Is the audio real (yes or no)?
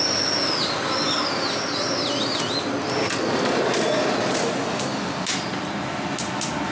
yes